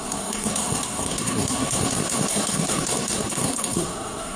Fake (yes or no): yes